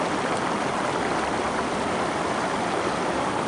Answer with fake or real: real